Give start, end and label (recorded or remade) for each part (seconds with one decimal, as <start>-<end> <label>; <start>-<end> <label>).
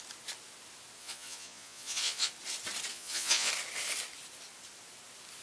0.0-1.0 recorded; 1.0-2.3 remade; 2.3-2.9 recorded; 2.9-3.5 remade; 3.5-5.4 recorded